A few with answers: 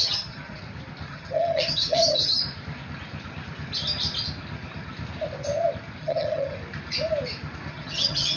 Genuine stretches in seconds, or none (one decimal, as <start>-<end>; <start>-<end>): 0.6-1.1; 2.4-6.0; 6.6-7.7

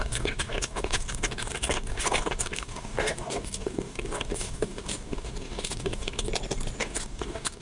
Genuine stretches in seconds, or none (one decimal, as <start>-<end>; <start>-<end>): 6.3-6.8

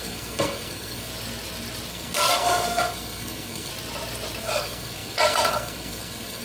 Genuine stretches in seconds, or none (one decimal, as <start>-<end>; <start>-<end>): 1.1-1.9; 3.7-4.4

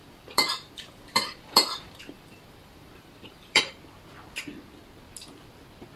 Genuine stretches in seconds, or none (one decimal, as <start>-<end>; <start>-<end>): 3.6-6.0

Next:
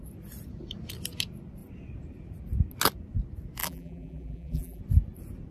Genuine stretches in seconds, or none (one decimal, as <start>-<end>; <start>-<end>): 0.0-3.6; 4.8-5.5

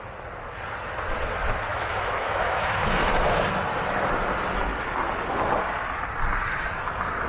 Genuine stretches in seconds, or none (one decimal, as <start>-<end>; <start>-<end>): 0.0-1.7; 2.9-7.3